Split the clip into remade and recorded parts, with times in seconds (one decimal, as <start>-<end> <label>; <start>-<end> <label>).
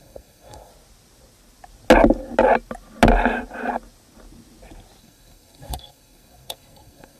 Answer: 0.0-0.7 remade; 0.7-5.0 recorded; 5.0-7.2 remade